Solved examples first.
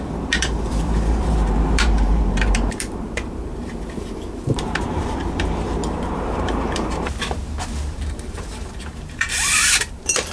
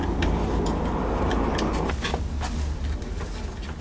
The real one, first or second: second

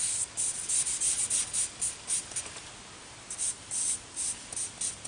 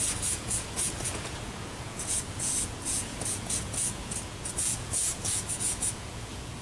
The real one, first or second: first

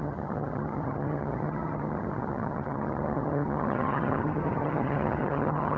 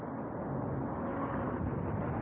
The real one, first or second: second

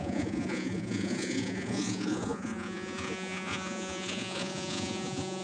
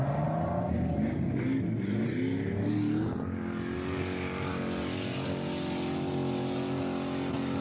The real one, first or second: second